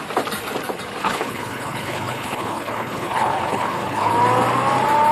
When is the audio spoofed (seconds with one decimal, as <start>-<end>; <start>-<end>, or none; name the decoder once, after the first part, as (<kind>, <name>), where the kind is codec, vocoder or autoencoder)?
1.0-4.1 (codec, HILCodec)